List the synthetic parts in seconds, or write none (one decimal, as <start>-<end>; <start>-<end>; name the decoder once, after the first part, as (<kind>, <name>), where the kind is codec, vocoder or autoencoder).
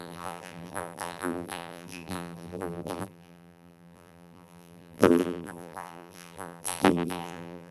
0.0-7.7 (vocoder, BigVGAN v2)